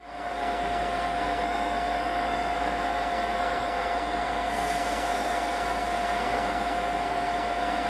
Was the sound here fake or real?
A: fake